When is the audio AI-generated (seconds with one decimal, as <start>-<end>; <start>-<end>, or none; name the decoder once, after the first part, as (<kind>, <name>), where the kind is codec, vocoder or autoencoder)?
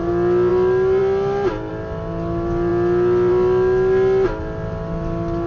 none